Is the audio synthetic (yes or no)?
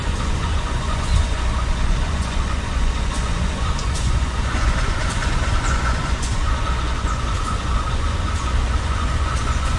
yes